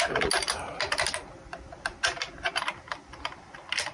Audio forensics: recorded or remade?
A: recorded